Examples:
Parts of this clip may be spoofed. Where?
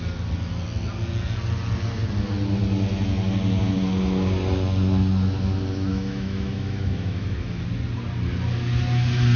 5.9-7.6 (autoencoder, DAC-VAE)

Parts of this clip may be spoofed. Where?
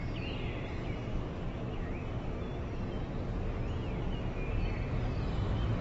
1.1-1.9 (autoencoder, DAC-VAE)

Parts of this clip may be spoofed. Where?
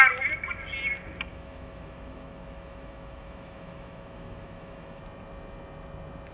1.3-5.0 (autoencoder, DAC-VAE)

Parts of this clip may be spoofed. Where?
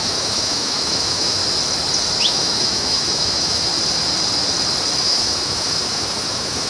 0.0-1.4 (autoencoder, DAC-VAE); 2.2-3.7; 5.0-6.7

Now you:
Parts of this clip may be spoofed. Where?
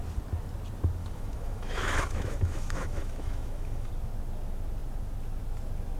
1.0-3.9 (autoencoder, DAC-VAE)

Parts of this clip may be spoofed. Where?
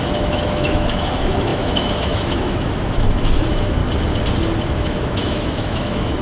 0.0-3.8 (autoencoder, DAC-VAE); 4.7-6.2